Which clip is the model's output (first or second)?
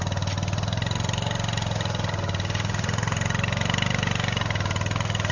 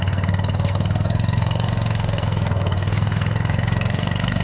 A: second